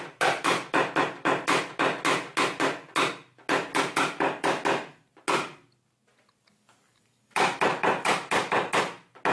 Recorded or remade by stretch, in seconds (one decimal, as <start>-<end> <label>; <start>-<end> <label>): 0.0-6.9 recorded; 6.9-8.5 remade; 8.5-9.3 recorded